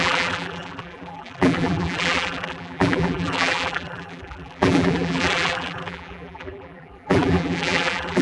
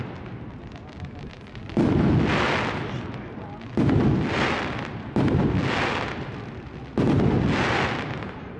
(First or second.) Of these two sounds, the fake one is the first